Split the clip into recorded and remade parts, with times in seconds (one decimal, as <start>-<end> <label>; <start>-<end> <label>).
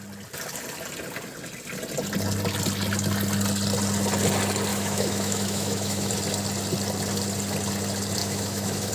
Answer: 0.0-4.7 recorded; 4.7-6.1 remade; 6.1-8.2 recorded; 8.2-8.9 remade